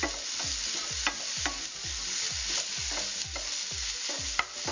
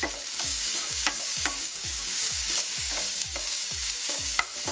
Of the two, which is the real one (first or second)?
first